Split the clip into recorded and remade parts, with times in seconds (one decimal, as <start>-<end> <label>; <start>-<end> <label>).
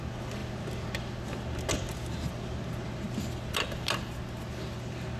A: 0.0-5.2 recorded